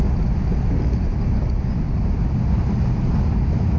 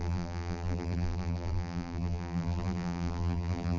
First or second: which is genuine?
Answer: first